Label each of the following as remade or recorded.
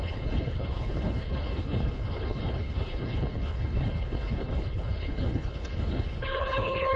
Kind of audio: remade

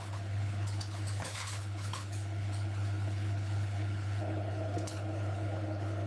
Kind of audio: remade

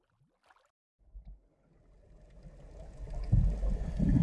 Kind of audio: recorded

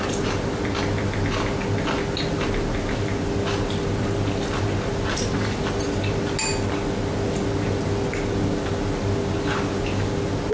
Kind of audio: recorded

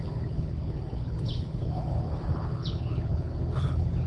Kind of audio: remade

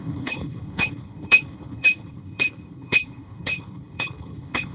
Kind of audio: remade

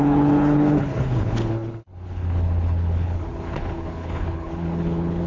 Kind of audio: remade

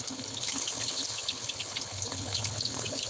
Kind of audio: remade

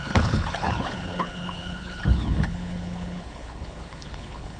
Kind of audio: remade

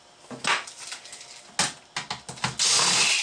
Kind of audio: recorded